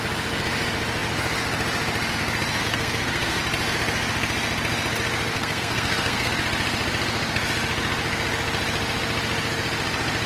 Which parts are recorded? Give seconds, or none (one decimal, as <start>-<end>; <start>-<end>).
0.0-2.6; 3.4-5.3; 6.3-10.3